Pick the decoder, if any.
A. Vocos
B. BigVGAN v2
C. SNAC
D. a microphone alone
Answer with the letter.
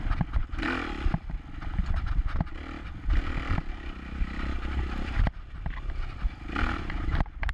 D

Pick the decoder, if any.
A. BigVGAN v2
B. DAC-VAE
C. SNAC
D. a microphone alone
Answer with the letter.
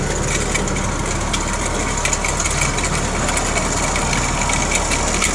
D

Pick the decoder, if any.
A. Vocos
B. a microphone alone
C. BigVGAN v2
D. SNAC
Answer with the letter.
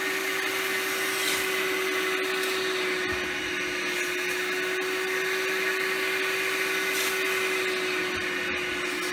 B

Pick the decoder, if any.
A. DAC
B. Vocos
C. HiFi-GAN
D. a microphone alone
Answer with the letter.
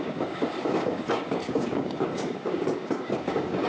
A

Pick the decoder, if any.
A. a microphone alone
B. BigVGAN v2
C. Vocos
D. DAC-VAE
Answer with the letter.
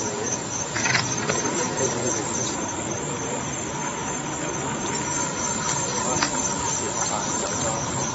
A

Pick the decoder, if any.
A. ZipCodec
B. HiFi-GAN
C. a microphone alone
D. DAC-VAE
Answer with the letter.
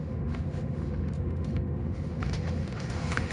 D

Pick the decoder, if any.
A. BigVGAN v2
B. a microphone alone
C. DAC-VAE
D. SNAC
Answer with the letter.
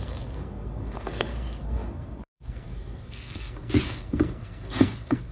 D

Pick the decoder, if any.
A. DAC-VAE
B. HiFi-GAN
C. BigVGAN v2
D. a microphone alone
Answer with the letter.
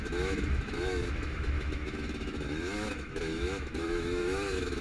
A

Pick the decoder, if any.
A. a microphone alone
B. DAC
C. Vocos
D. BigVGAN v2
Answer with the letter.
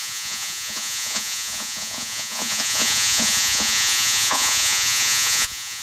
C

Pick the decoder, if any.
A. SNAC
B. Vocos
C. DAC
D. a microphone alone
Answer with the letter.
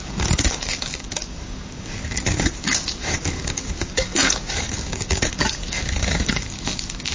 C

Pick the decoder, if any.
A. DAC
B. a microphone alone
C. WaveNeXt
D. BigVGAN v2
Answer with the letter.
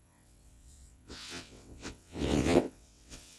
C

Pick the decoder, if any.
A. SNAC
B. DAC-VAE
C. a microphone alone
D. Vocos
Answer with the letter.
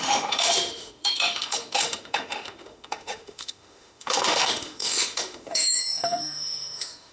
B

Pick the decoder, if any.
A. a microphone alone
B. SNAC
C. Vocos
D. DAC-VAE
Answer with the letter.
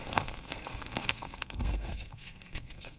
B